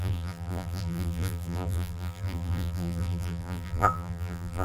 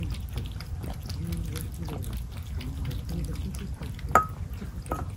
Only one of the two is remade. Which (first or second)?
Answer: first